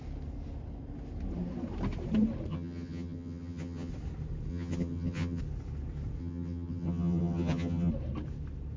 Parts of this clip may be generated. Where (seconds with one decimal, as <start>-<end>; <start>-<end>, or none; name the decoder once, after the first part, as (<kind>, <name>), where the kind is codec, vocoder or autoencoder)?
2.5-3.9 (vocoder, HiFi-GAN); 4.5-5.4; 6.2-7.9